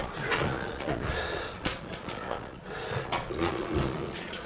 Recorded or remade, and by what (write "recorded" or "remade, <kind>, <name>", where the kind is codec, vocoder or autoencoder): remade, vocoder, Vocos